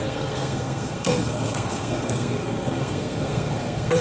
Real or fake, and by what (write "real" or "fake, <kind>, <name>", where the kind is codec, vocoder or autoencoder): fake, codec, SNAC